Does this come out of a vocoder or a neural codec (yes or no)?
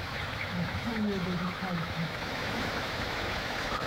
yes